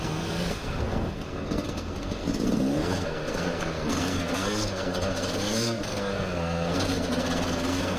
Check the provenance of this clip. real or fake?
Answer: fake